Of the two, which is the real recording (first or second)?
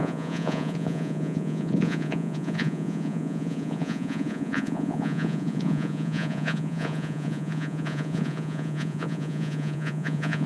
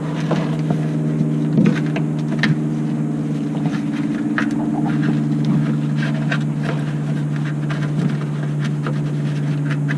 second